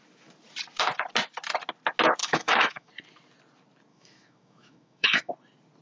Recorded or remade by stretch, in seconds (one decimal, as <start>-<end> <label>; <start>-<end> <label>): 0.0-2.2 recorded; 2.2-2.9 remade; 2.9-3.9 recorded; 3.9-5.3 remade; 5.3-5.8 recorded